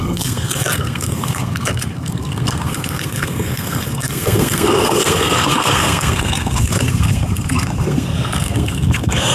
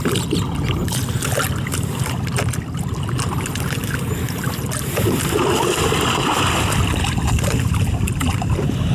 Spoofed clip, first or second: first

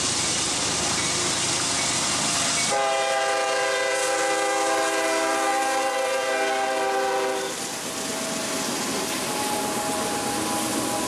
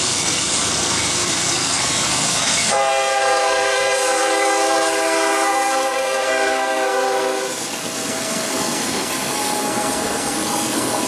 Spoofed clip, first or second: second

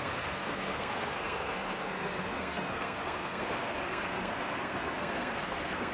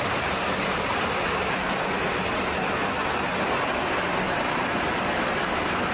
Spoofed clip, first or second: first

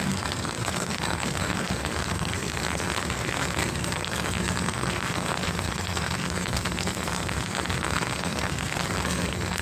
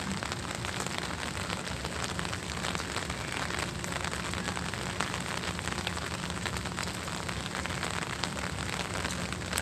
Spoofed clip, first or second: first